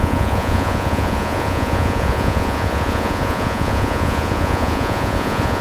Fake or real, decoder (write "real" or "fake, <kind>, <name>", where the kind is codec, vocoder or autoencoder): fake, vocoder, Vocos